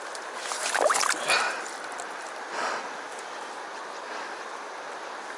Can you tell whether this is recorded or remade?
recorded